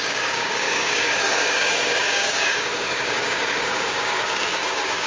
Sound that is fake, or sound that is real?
fake